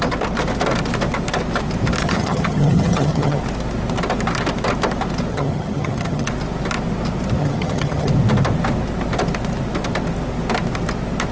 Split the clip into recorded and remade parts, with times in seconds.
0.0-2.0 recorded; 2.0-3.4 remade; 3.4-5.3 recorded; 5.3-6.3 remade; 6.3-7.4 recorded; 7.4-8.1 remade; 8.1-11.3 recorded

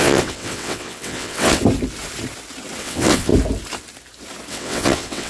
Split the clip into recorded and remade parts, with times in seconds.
0.0-1.6 remade; 1.6-2.8 recorded; 2.8-3.3 remade; 3.3-4.5 recorded; 4.5-5.3 remade